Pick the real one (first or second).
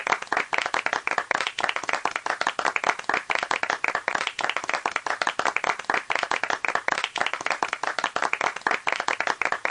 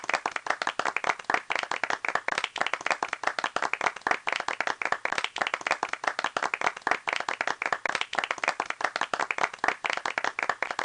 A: second